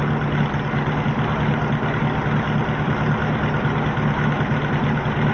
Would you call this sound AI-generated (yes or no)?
no